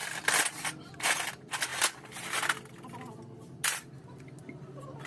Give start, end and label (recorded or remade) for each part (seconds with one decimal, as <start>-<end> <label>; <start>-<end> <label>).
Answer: 0.0-5.1 recorded